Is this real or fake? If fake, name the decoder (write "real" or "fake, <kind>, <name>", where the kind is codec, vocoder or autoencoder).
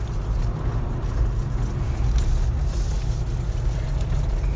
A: real